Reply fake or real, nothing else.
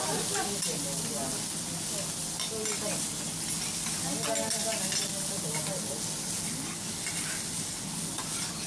real